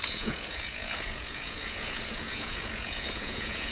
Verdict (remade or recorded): remade